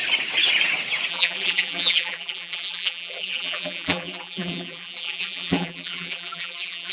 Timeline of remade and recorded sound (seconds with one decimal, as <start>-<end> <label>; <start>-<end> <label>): 0.0-1.1 recorded; 1.1-6.9 remade